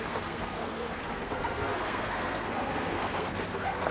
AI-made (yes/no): yes